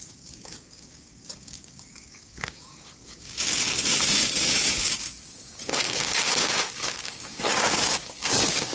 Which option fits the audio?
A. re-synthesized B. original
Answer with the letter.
A